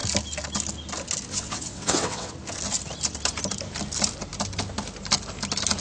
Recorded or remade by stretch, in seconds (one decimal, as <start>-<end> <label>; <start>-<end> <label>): 0.0-1.3 recorded; 1.3-2.3 remade; 2.3-5.8 recorded